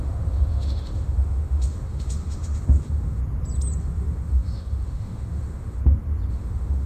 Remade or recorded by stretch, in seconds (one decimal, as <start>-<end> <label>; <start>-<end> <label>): 0.0-3.2 remade; 3.2-3.8 recorded; 3.8-5.8 remade; 5.8-6.3 recorded; 6.3-6.9 remade